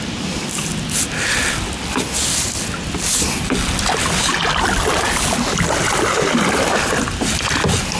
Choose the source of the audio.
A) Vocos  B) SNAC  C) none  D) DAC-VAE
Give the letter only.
C